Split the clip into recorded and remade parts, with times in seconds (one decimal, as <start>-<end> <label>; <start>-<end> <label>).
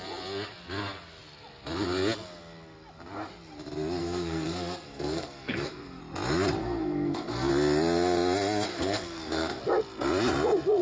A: 0.0-4.0 recorded; 4.0-6.0 remade; 6.0-6.6 recorded; 6.6-7.5 remade; 7.5-8.7 recorded; 8.7-9.6 remade; 9.6-10.8 recorded